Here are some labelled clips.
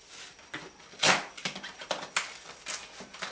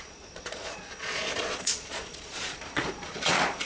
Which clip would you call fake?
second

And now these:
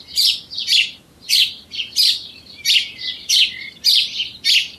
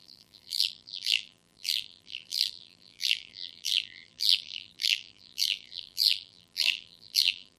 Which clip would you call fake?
second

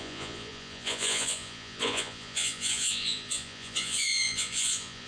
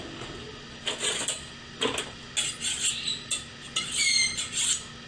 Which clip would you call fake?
first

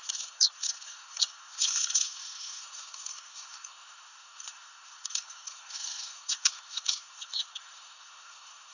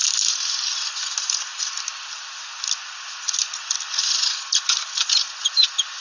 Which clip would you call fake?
first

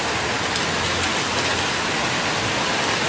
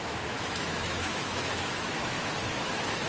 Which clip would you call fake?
second